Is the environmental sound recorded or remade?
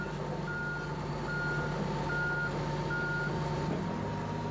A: recorded